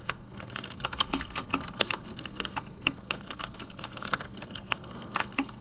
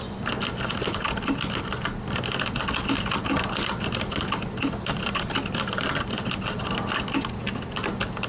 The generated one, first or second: first